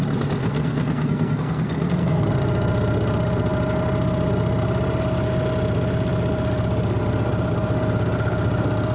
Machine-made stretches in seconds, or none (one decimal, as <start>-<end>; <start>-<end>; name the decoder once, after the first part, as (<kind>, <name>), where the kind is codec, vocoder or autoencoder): 0.4-2.3 (codec, SNAC)